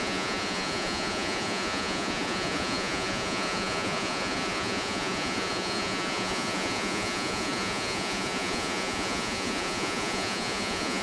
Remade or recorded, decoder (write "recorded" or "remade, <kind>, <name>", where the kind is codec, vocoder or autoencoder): remade, vocoder, Vocos